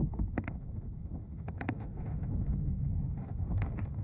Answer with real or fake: fake